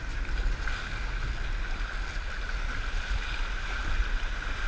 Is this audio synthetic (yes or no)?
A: no